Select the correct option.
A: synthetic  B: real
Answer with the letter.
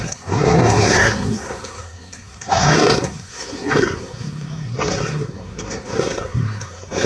A